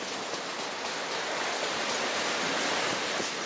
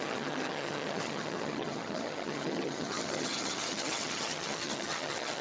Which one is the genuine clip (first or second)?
first